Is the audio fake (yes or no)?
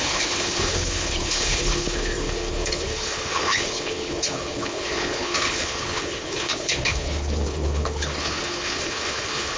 yes